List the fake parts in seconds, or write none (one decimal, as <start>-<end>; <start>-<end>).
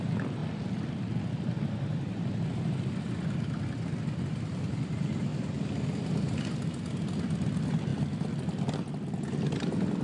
none